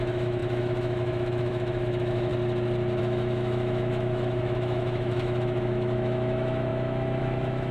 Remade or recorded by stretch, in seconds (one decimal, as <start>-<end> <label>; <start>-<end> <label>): 0.0-2.3 remade; 2.3-3.0 recorded; 3.0-7.7 remade

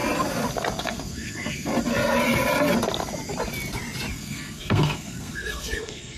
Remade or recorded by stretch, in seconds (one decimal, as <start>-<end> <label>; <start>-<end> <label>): 0.0-0.8 recorded; 0.8-1.7 remade; 1.7-4.1 recorded; 4.1-6.2 remade

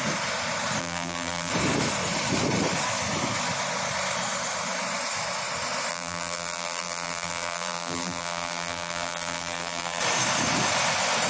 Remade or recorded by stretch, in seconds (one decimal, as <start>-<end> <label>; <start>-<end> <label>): 0.0-0.8 recorded; 0.8-1.5 remade; 1.5-5.9 recorded; 5.9-10.0 remade; 10.0-11.3 recorded

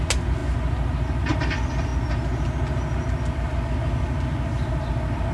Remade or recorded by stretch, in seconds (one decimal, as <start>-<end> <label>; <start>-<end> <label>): 0.0-5.3 recorded

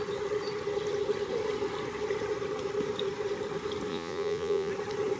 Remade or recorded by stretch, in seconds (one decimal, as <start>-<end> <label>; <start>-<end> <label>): 0.0-3.9 recorded; 3.9-4.7 remade; 4.7-5.2 recorded